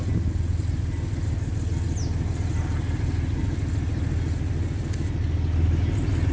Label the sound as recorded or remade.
recorded